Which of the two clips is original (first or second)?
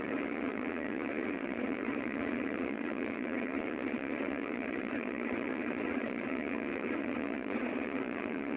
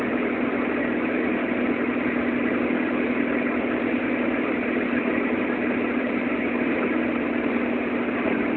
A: second